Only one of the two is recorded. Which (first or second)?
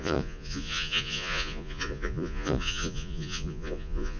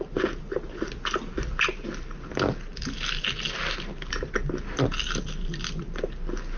second